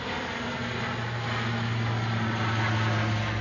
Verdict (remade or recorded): recorded